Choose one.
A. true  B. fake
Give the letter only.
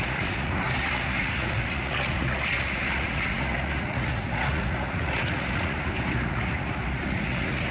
B